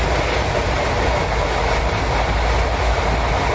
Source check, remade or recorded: recorded